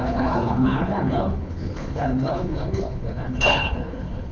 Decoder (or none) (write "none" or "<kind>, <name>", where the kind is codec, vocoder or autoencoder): codec, HILCodec